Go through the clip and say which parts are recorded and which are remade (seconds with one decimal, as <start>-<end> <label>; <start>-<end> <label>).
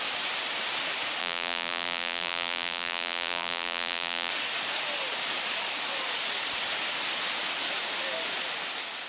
0.0-1.2 recorded; 1.2-4.3 remade; 4.3-9.1 recorded